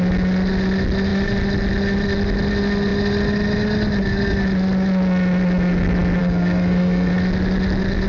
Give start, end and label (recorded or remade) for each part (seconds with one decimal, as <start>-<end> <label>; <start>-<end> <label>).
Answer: 0.0-6.2 recorded; 6.2-7.1 remade; 7.1-8.1 recorded